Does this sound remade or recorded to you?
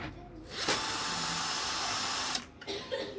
recorded